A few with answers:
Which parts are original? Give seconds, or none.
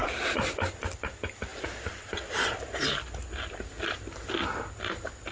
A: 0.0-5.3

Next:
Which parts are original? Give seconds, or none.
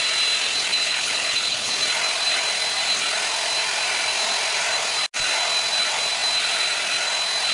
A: 0.0-0.7; 1.7-7.5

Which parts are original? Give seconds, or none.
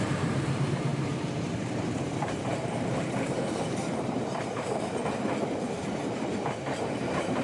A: 5.0-6.5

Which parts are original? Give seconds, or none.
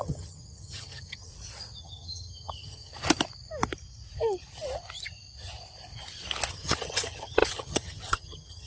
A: 1.3-1.8; 2.9-6.5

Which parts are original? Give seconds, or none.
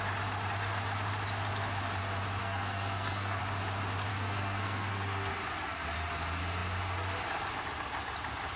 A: 0.0-2.4; 3.4-4.1; 5.3-8.6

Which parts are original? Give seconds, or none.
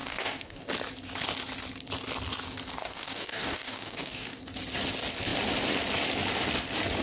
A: 0.7-2.8; 4.4-7.0